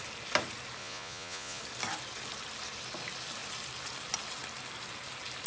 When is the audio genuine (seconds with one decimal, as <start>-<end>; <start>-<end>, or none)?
0.0-0.8; 1.6-5.5